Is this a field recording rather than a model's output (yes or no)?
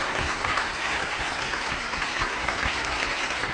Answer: no